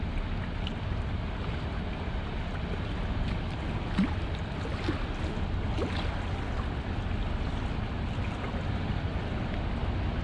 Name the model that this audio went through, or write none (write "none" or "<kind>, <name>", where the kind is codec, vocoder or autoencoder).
none